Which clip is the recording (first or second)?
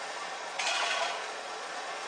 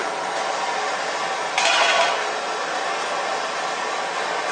second